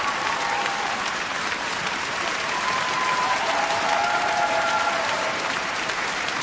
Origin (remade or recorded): remade